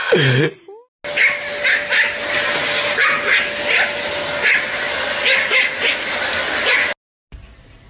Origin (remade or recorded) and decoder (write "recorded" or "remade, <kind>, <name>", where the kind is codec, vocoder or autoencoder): recorded